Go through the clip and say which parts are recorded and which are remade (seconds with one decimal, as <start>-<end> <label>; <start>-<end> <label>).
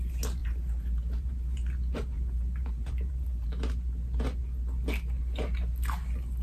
0.0-0.4 recorded; 0.4-3.5 remade; 3.5-6.4 recorded